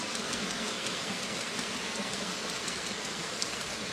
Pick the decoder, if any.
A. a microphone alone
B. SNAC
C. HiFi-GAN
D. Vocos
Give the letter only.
B